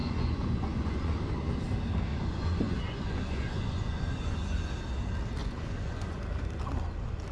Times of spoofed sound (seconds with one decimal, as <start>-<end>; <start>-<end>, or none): 0.0-1.3; 2.1-4.7; 5.4-6.2